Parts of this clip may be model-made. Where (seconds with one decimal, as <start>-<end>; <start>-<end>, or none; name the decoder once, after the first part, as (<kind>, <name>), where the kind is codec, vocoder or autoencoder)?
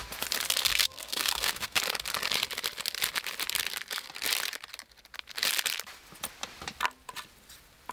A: 0.7-1.8 (codec, SNAC)